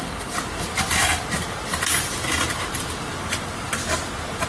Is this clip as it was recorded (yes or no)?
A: yes